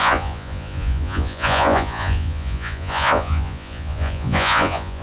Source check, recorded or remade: remade